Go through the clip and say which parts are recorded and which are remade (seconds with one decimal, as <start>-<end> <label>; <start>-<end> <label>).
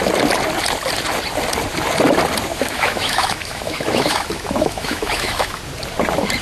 0.0-2.5 recorded; 2.5-5.6 remade; 5.6-6.4 recorded